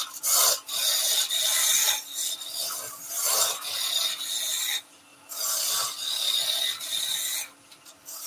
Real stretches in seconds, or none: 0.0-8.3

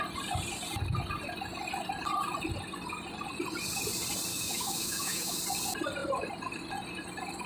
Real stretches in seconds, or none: 0.0-4.3; 5.4-7.5

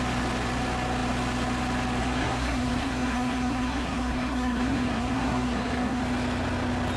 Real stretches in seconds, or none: 0.0-2.0; 6.0-7.0

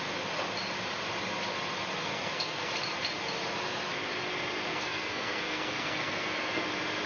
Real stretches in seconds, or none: 0.0-2.0; 2.7-4.7; 6.6-7.1

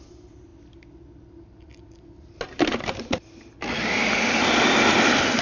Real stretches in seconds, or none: 0.0-5.4

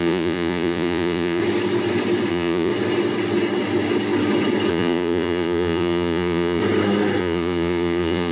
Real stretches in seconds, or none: 1.4-2.3; 2.7-4.7; 6.6-7.2

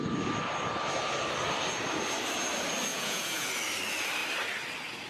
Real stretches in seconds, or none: 0.0-2.9; 3.5-5.1

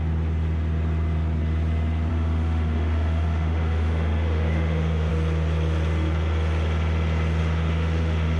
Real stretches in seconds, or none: 0.0-2.1; 5.1-7.4